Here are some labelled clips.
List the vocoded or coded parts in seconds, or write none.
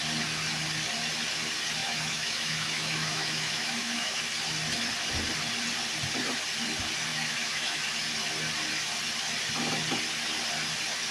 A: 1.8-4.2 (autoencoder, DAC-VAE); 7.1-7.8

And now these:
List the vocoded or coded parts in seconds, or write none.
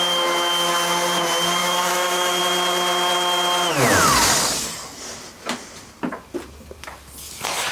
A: 1.6-2.4 (autoencoder, DAC-VAE)